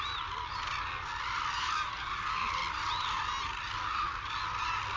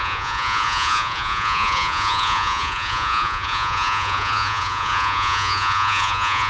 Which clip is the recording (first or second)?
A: first